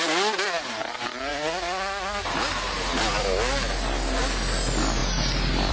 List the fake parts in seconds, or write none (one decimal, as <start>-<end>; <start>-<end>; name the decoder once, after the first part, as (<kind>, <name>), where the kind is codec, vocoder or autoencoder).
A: none

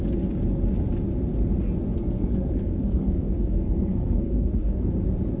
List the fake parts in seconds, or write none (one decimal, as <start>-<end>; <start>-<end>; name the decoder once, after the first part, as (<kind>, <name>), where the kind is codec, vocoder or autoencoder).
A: 1.9-4.9 (codec, SNAC)

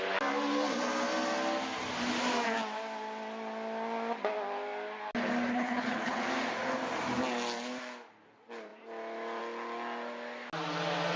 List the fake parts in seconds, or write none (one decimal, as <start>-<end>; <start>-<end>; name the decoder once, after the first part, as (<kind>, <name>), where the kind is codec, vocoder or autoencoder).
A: 5.5-6.2 (codec, HILCodec)

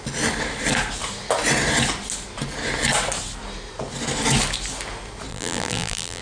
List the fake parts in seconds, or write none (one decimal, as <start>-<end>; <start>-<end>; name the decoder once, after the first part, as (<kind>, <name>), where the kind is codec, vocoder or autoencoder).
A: 5.3-6.2 (vocoder, BigVGAN v2)

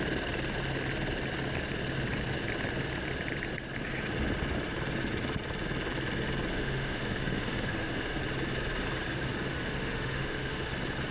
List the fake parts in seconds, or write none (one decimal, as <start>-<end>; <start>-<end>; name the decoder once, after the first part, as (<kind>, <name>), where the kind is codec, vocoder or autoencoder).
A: 6.5-8.2 (autoencoder, DAC-VAE); 9.5-10.7

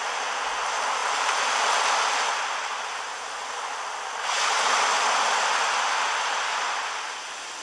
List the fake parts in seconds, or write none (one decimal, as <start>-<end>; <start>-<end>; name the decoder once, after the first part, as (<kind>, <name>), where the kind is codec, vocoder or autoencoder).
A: 1.0-1.9 (vocoder, BigVGAN v2)

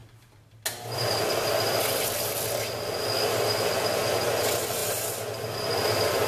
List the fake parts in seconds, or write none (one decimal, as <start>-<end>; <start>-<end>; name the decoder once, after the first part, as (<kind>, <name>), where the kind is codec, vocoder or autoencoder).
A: none